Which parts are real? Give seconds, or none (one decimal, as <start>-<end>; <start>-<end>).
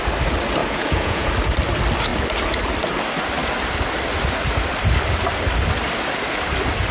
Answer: 0.0-0.6; 1.3-6.9